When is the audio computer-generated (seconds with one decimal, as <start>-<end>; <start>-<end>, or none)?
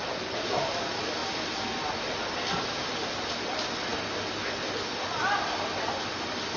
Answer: none